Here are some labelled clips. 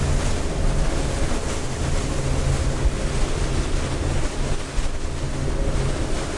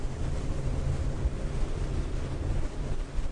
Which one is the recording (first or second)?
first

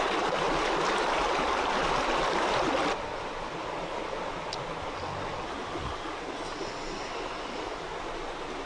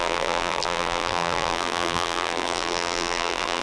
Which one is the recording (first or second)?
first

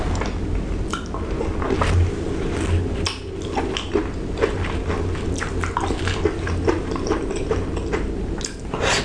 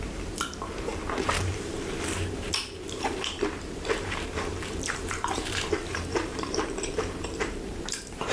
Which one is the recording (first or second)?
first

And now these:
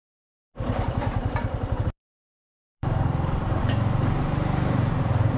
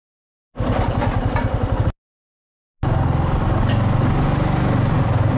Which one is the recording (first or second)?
second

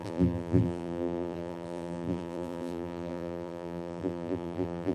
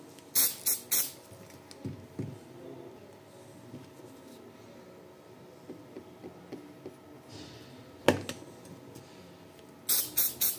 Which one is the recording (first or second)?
second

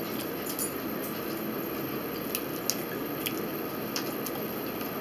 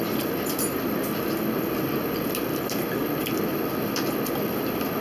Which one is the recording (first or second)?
first